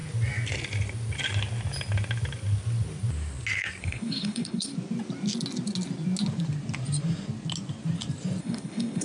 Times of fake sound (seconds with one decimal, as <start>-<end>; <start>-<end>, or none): 3.8-4.7; 8.4-9.0